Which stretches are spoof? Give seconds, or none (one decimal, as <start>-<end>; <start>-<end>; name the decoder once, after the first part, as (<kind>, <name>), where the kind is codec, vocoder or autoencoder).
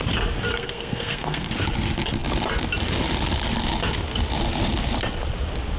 0.5-1.5 (codec, SNAC)